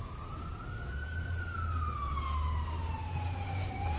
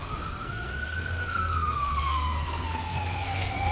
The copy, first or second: second